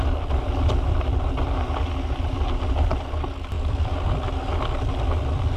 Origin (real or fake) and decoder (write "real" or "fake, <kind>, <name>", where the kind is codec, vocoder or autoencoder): real